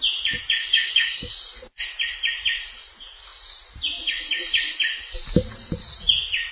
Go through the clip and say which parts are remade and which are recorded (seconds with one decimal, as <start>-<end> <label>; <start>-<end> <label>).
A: 0.0-0.7 recorded; 0.7-1.3 remade; 1.3-6.5 recorded

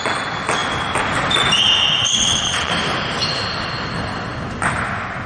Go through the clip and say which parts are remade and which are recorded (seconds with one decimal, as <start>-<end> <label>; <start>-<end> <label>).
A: 0.0-2.0 recorded; 2.0-2.7 remade; 2.7-5.3 recorded

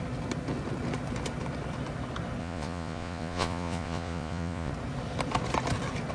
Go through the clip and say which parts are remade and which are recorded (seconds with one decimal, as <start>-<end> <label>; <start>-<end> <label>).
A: 0.0-2.4 recorded; 2.4-4.7 remade; 4.7-6.1 recorded

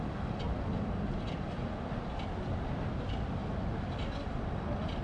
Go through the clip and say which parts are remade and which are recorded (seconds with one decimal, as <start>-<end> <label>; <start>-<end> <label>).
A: 0.0-5.0 recorded